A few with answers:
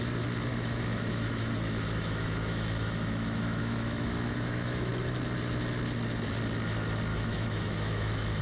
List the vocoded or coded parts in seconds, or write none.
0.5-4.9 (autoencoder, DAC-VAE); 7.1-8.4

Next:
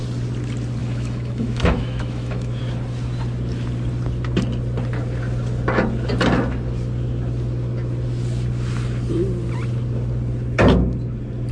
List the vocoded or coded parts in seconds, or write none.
0.8-2.6 (autoencoder, DAC-VAE)

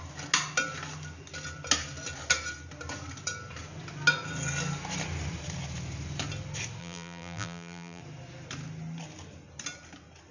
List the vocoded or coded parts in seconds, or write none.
6.8-8.0 (vocoder, BigVGAN v2)

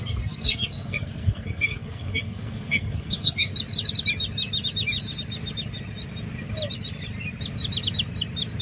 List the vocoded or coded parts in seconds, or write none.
0.0-3.5 (codec, SNAC)

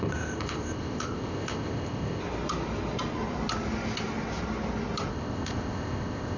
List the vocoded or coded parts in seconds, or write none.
0.0-2.2 (codec, ZipCodec); 5.1-6.4

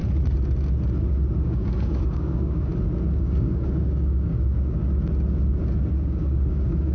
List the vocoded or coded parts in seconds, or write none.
1.4-2.7 (codec, DAC); 3.2-4.8; 5.9-6.9